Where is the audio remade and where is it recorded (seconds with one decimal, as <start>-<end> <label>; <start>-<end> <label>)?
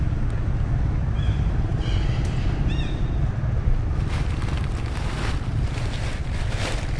0.0-7.0 recorded